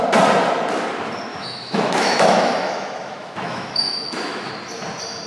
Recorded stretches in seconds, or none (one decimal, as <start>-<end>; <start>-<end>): 0.0-1.3; 4.5-5.3